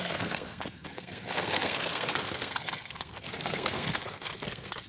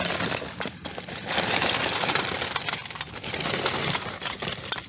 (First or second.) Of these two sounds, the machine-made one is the first